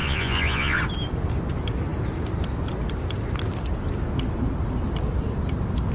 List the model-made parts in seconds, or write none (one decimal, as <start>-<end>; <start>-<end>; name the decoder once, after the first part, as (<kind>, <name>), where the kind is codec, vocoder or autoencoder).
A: 0.0-0.8 (vocoder, Vocos)